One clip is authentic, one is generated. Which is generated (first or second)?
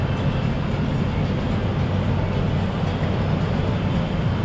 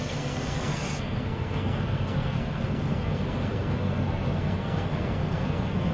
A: second